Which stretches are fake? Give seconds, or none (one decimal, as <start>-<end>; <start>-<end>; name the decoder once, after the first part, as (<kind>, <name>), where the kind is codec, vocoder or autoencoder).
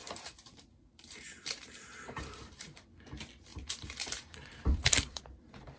0.0-2.8 (vocoder, BigVGAN v2); 3.5-5.2